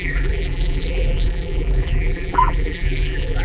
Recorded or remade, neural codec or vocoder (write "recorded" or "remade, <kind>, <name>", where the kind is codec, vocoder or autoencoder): remade, vocoder, BigVGAN v2